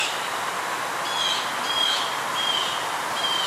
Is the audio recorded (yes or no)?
yes